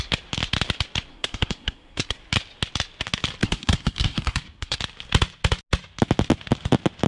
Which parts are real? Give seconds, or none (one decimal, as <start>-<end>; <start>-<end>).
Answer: 0.0-1.1; 2.2-3.4; 4.8-7.1